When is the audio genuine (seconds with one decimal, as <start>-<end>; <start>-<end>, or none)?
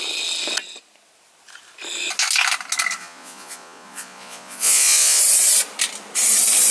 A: 0.0-3.0; 5.2-6.7